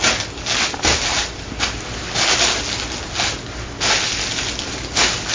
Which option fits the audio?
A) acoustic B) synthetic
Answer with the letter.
A